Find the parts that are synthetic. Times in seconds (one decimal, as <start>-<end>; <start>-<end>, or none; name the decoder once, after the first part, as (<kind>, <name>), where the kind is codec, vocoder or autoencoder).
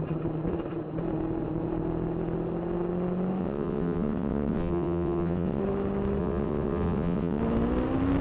3.4-5.6 (vocoder, WaveNeXt); 6.2-7.4